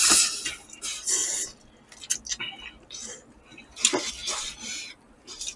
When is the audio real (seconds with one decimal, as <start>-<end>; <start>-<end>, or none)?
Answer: 1.2-3.7